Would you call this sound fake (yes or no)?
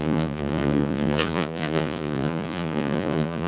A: yes